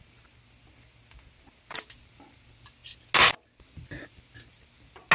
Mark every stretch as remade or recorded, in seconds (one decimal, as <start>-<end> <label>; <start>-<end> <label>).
0.0-5.1 recorded